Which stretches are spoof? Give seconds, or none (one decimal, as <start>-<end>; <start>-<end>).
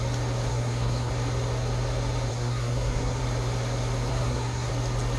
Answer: 0.5-1.1; 2.3-3.2; 4.1-4.7